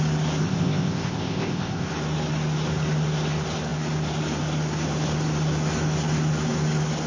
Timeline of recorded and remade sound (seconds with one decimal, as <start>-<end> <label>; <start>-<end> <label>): 0.0-0.4 recorded; 0.4-1.9 remade; 1.9-7.1 recorded